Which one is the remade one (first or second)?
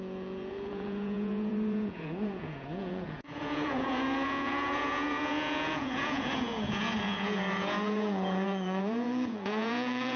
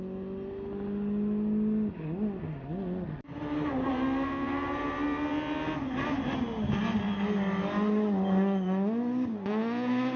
first